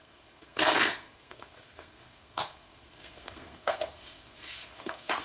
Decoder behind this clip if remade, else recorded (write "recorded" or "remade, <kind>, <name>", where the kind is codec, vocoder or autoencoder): remade, codec, SNAC